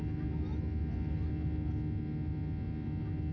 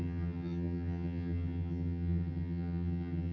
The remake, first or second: second